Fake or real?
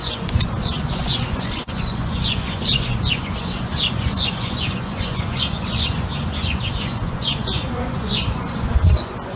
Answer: fake